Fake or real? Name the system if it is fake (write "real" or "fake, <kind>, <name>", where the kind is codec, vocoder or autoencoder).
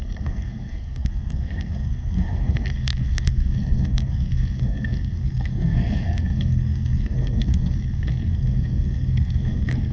fake, codec, SNAC